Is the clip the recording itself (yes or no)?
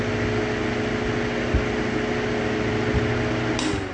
yes